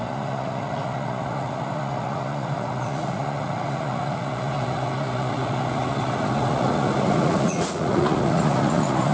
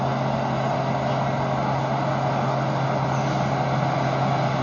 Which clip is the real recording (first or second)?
second